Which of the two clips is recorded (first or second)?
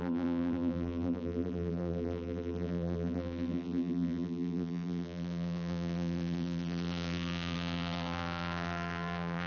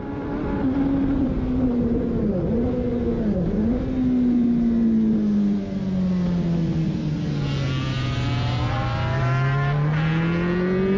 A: second